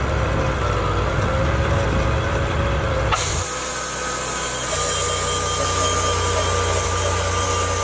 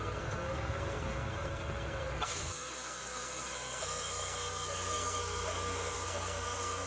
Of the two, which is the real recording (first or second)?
first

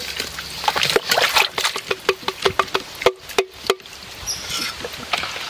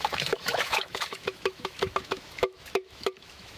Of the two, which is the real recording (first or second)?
first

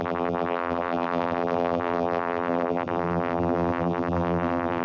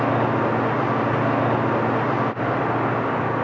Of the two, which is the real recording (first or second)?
second